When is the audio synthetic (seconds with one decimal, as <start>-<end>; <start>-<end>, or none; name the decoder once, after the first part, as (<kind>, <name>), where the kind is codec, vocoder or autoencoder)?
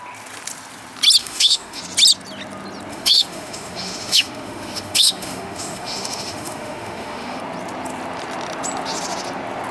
1.2-1.8 (autoencoder, DAC-VAE); 2.9-7.4